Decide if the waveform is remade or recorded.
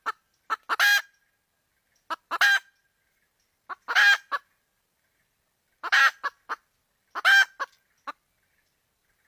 recorded